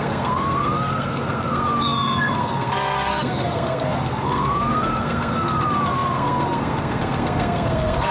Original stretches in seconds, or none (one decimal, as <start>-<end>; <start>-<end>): none